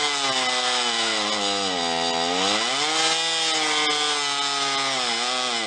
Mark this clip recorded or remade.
recorded